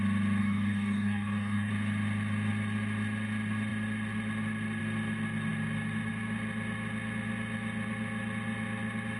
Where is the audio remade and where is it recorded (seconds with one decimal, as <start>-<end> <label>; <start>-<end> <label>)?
0.0-0.4 recorded; 0.4-1.7 remade; 1.7-9.2 recorded